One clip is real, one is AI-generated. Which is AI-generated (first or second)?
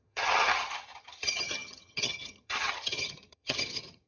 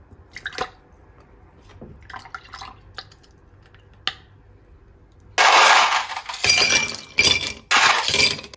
first